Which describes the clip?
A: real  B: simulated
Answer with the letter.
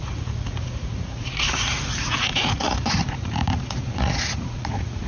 B